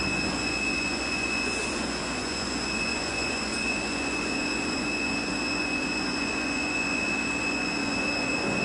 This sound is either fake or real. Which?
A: fake